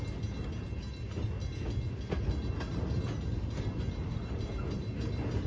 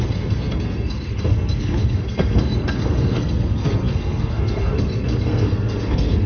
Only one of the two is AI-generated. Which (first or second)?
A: second